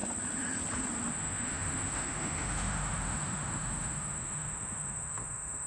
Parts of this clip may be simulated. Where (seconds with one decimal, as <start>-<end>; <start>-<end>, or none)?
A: 1.1-5.7